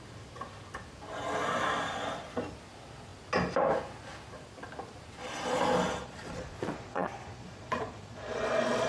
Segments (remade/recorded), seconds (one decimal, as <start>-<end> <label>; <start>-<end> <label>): 0.0-6.0 recorded; 6.0-8.9 remade